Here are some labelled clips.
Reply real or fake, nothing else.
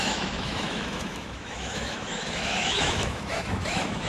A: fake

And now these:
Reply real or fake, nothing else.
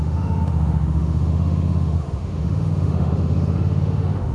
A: fake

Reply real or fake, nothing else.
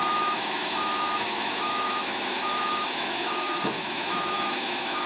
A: fake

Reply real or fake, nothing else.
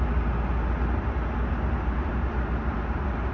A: real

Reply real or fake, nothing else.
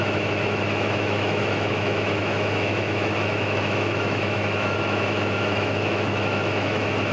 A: fake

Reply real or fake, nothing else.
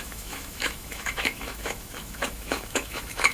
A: fake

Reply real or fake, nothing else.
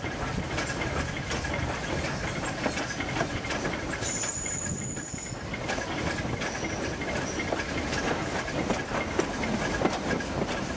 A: real